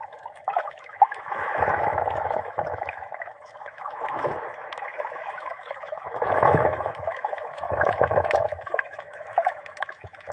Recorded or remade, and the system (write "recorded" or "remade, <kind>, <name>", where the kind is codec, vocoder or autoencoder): remade, autoencoder, DAC-VAE